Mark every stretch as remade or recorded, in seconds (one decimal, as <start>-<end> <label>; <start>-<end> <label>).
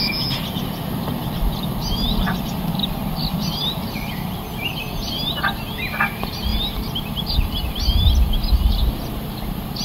0.0-6.5 recorded; 6.5-8.1 remade; 8.1-9.8 recorded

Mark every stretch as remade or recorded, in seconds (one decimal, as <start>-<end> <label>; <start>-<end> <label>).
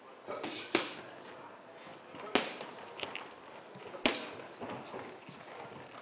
0.0-6.0 recorded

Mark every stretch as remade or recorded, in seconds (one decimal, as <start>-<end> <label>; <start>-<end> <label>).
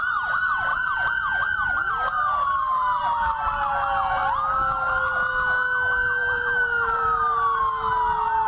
0.0-3.0 recorded; 3.0-3.7 remade; 3.7-6.2 recorded; 6.2-7.6 remade; 7.6-8.5 recorded